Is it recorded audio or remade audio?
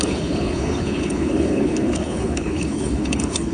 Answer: remade